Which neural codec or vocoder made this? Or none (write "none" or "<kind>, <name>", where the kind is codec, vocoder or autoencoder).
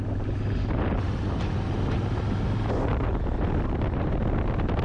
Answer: none